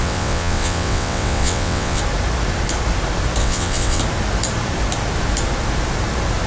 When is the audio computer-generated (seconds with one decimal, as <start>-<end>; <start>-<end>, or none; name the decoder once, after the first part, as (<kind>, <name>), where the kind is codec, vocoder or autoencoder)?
0.0-2.0 (vocoder, WaveNeXt); 3.4-4.0